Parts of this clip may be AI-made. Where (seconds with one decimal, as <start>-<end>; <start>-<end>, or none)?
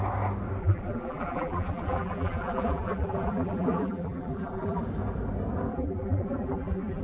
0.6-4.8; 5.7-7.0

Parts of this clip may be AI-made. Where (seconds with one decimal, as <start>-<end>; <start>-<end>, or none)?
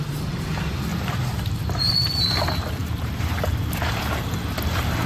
0.9-1.8; 2.8-3.9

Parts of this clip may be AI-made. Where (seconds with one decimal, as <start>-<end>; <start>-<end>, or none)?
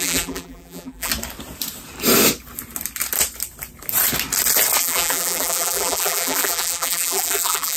0.0-1.1; 4.8-7.8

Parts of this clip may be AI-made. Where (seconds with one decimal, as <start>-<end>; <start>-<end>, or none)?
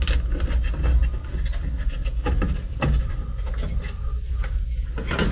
none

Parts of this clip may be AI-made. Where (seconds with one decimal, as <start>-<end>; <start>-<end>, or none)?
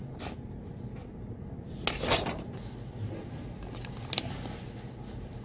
none